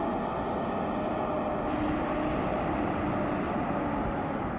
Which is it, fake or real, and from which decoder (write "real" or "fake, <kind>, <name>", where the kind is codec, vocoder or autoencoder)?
real